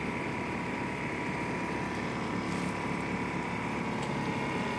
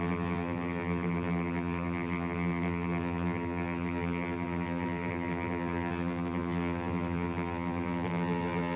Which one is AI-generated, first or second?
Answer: second